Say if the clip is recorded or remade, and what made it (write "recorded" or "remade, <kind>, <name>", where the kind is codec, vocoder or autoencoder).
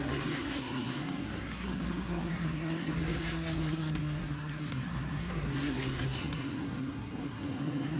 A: remade, codec, SNAC